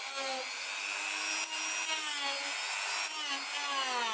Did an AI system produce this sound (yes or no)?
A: no